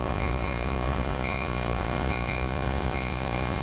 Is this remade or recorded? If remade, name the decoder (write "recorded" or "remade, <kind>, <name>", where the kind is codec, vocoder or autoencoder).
remade, vocoder, Vocos